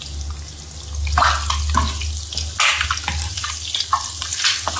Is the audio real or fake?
real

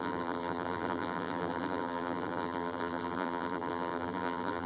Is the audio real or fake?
fake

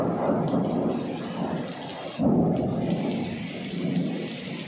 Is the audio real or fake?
real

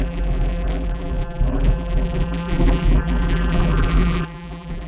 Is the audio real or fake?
fake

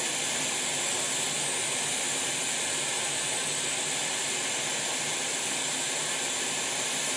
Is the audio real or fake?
real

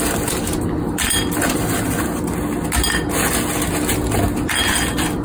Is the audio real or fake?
real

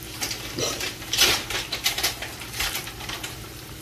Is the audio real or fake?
fake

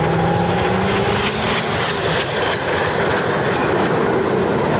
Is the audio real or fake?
real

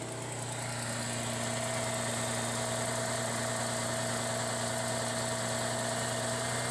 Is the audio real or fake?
real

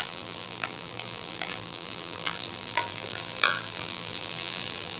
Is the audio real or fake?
fake